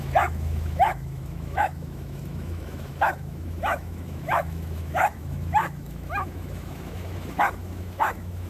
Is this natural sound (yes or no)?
no